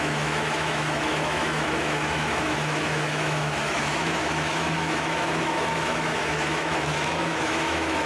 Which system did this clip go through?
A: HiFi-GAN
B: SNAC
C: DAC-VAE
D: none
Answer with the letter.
C